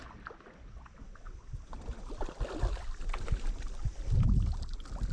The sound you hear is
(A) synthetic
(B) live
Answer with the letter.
B